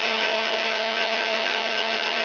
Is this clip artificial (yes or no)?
yes